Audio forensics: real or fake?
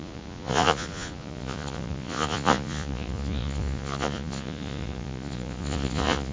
fake